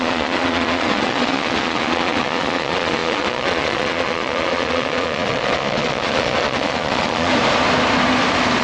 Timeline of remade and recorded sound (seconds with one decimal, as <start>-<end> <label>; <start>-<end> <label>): 0.0-7.3 remade; 7.3-8.6 recorded

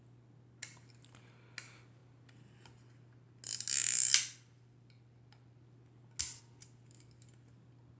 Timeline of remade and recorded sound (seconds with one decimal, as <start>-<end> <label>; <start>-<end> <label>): 0.0-8.0 recorded